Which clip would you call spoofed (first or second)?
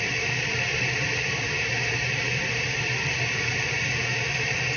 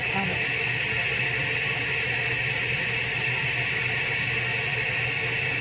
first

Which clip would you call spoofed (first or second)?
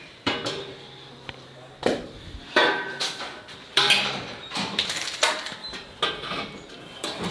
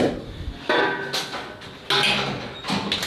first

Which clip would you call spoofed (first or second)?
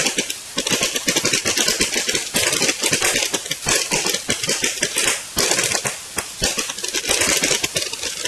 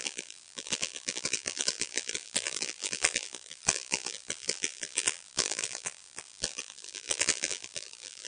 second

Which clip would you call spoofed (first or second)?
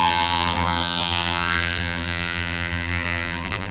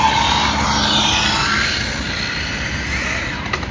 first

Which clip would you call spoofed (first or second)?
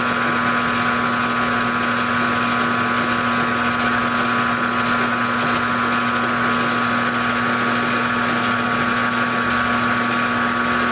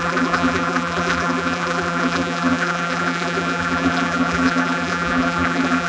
second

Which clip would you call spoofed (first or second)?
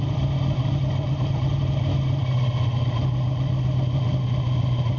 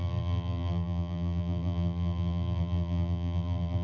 second